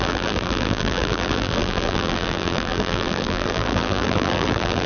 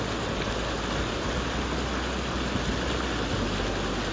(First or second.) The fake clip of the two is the first